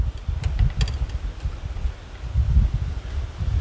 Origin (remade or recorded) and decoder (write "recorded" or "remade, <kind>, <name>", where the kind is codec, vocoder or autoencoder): recorded